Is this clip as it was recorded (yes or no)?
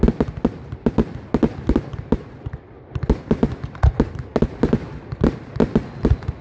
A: yes